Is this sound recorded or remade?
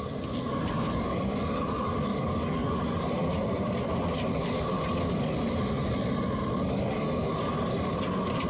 recorded